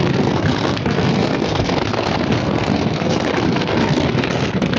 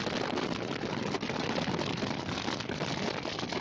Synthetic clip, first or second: first